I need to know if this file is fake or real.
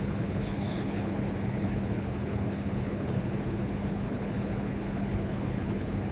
fake